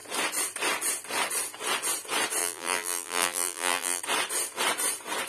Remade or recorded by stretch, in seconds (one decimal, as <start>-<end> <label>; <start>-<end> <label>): 0.0-2.4 recorded; 2.4-4.0 remade; 4.0-5.3 recorded